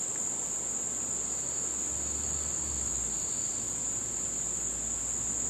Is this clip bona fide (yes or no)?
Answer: yes